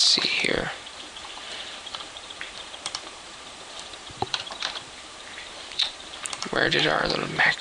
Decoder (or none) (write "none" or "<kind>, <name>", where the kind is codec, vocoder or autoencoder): vocoder, BigVGAN v2